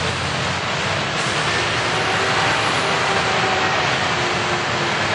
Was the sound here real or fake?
real